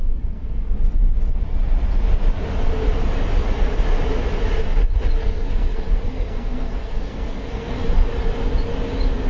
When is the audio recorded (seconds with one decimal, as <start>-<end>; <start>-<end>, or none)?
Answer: 0.6-5.2; 7.8-9.3